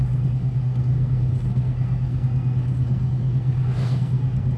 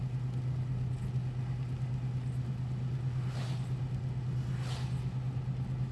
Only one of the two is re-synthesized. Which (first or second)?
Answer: first